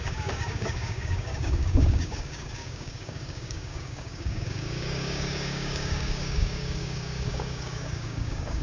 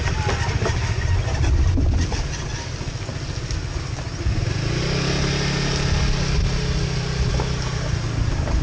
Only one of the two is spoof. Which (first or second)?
first